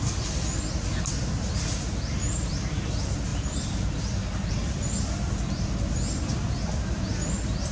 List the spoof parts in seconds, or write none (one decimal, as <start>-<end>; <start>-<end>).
3.3-4.5; 7.1-7.7